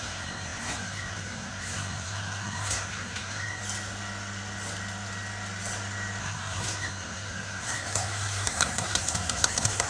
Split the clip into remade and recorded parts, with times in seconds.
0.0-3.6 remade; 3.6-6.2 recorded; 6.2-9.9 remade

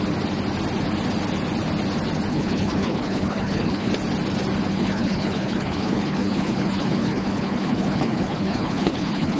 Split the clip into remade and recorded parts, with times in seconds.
0.0-2.3 recorded; 2.3-3.9 remade; 3.9-4.7 recorded; 4.7-9.4 remade